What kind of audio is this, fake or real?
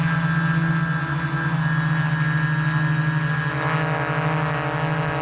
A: real